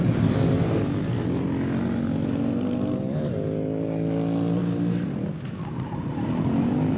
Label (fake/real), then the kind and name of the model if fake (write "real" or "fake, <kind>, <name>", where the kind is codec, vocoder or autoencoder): real